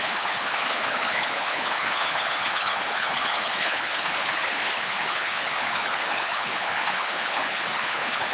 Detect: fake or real fake